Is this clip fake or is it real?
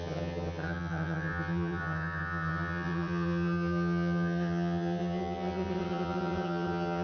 fake